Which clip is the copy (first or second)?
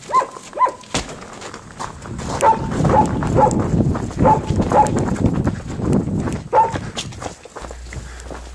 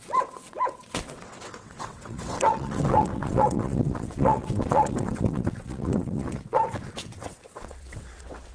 second